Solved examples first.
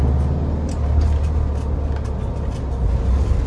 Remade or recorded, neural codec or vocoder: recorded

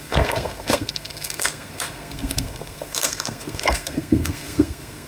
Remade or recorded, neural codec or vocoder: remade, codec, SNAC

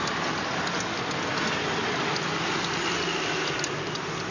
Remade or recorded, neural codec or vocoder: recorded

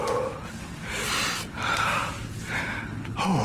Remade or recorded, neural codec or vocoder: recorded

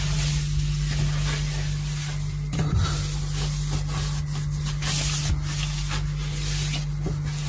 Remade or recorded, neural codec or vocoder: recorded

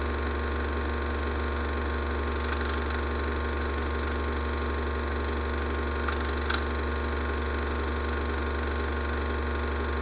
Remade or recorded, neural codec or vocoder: recorded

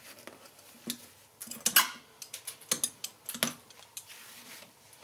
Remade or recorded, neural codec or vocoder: recorded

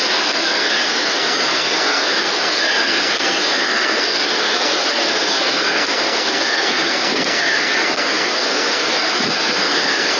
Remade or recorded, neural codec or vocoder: remade, codec, SNAC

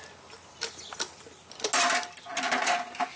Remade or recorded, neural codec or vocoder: recorded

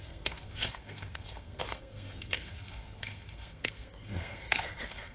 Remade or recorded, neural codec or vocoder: remade, codec, SNAC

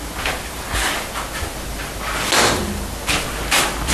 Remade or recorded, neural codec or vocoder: recorded